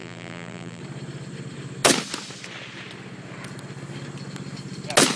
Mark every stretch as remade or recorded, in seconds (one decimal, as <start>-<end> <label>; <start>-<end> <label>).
0.0-0.8 remade; 0.8-5.2 recorded